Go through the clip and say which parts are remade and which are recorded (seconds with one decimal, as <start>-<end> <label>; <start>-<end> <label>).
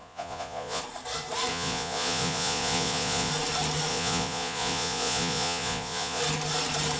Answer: 0.0-0.8 remade; 0.8-1.5 recorded; 1.5-3.3 remade; 3.3-3.9 recorded; 3.9-6.2 remade; 6.2-7.0 recorded